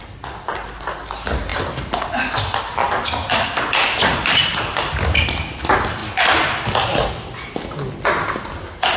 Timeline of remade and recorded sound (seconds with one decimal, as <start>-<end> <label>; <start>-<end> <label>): 0.0-9.0 recorded

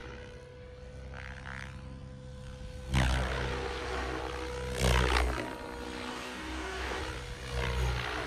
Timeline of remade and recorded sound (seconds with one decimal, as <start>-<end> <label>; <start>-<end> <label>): 0.0-6.1 recorded; 6.1-7.0 remade; 7.0-8.3 recorded

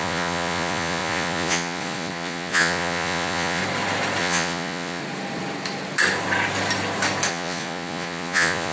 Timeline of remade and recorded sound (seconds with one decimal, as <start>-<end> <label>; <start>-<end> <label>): 0.0-3.6 remade; 3.6-4.2 recorded; 4.2-5.0 remade; 5.0-7.3 recorded; 7.3-8.7 remade

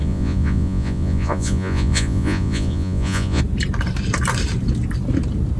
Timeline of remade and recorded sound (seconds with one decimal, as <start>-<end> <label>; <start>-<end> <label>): 0.0-3.4 remade; 3.4-5.6 recorded